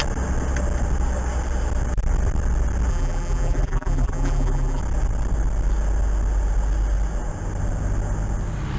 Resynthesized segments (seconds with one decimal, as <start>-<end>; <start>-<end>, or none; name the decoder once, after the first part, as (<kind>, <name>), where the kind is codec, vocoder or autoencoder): 2.9-4.8 (vocoder, BigVGAN v2)

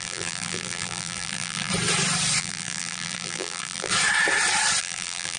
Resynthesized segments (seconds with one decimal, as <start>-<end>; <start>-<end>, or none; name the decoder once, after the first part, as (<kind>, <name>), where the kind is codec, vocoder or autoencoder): 0.0-1.7 (vocoder, BigVGAN v2); 2.4-3.9; 4.8-5.4

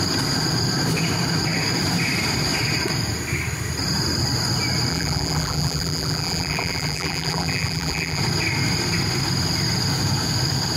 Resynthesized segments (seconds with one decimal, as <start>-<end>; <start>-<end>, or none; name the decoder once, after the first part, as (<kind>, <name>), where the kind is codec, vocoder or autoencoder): 4.9-8.2 (vocoder, BigVGAN v2)

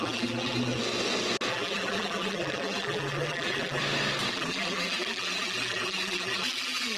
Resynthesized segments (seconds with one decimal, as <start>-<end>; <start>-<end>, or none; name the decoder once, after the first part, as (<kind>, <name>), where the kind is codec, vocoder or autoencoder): 0.0-0.8 (vocoder, BigVGAN v2); 1.5-3.8; 4.3-7.0

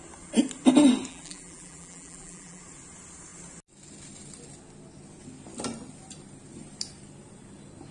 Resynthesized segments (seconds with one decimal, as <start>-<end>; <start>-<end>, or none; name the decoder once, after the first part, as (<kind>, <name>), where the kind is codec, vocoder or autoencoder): 1.1-2.6 (vocoder, BigVGAN v2)

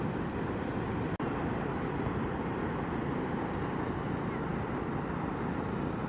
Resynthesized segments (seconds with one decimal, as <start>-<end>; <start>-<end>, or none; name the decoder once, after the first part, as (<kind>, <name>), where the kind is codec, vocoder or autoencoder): none